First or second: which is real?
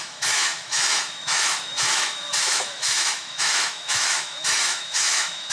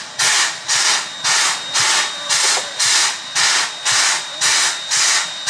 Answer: second